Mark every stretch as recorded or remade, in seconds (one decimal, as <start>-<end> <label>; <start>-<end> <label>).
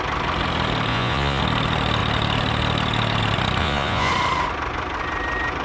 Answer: 0.0-0.9 recorded; 0.9-1.4 remade; 1.4-3.6 recorded; 3.6-4.1 remade; 4.1-5.6 recorded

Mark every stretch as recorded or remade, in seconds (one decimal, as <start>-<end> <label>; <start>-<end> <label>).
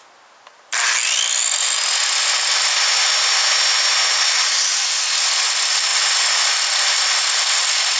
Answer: 0.0-8.0 recorded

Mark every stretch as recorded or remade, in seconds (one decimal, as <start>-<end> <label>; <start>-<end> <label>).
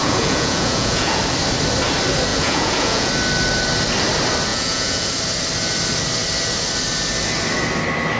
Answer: 0.0-1.2 remade; 1.2-2.3 recorded; 2.3-3.1 remade; 3.1-4.5 recorded; 4.5-5.1 remade; 5.1-8.2 recorded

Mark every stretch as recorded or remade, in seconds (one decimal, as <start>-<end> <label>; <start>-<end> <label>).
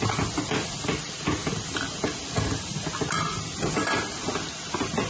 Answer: 0.0-5.1 recorded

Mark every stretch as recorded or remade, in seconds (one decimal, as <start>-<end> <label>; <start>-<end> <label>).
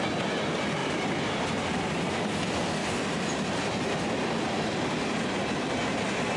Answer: 0.0-0.8 recorded; 0.8-1.4 remade; 1.4-2.8 recorded; 2.8-3.3 remade; 3.3-6.4 recorded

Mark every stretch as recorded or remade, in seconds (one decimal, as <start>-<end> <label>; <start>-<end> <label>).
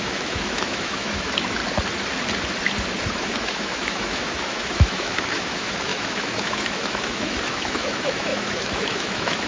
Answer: 0.0-1.6 remade; 1.6-3.2 recorded; 3.2-9.5 remade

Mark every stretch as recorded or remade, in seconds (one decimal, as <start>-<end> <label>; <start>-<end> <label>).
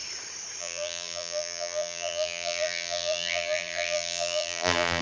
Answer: 0.0-0.6 recorded; 0.6-5.0 remade